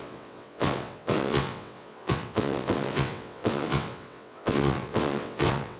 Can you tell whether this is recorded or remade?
remade